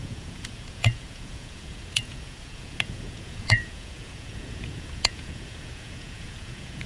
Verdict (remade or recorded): remade